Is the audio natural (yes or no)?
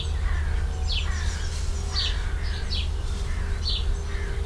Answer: yes